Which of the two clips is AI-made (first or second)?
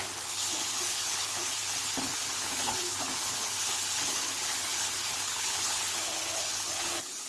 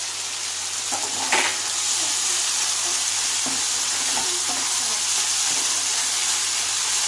first